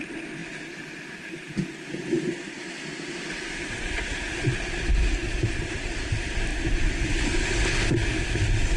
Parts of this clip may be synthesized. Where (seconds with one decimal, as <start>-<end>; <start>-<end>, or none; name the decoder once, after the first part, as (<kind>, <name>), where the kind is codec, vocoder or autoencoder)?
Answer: none